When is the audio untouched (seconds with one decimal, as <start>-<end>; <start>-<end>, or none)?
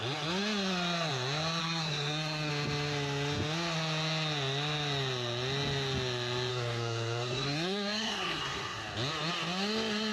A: 0.0-1.6; 2.5-6.5; 8.8-10.1